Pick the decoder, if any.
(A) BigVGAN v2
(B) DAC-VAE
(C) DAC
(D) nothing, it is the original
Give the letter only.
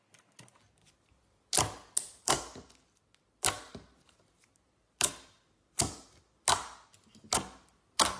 D